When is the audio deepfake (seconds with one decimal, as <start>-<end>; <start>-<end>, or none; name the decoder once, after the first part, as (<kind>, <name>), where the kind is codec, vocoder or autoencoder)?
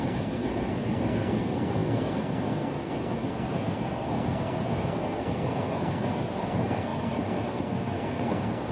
0.0-8.7 (codec, SNAC)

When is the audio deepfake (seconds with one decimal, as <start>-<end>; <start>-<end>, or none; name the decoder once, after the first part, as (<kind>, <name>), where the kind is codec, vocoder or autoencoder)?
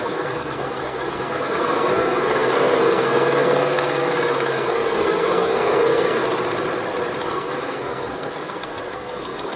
0.0-6.2 (codec, SNAC); 7.2-9.6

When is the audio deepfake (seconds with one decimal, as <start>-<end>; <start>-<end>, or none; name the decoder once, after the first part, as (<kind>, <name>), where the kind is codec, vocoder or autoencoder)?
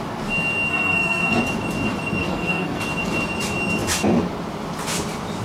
0.7-1.4 (codec, SNAC); 2.2-2.8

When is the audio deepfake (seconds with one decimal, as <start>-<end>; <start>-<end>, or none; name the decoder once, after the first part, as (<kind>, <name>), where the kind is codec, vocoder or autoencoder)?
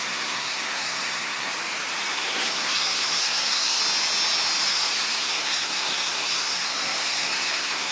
0.0-1.5 (codec, SNAC); 2.1-3.8; 4.7-7.9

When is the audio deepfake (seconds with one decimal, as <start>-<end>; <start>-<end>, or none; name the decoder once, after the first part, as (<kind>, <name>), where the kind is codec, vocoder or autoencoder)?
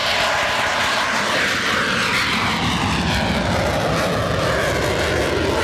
none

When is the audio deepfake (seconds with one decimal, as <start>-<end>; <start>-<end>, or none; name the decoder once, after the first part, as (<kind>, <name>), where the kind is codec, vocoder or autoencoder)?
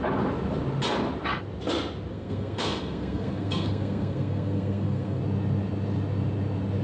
2.1-5.2 (codec, SNAC)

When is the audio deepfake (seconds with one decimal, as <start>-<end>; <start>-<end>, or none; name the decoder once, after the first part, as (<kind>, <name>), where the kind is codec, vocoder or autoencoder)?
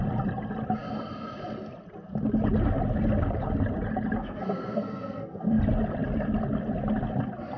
4.2-5.6 (codec, SNAC)